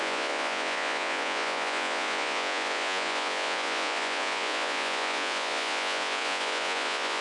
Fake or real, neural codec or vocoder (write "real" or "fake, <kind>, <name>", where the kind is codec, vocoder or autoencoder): fake, vocoder, Vocos